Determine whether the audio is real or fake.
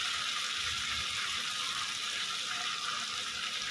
real